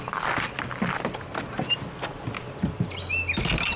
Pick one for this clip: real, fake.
real